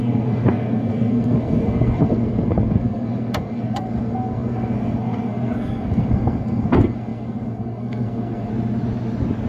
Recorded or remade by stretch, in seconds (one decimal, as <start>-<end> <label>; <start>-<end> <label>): 0.0-8.5 remade; 8.5-9.5 recorded